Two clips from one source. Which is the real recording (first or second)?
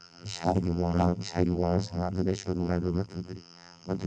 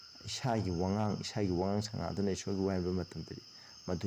second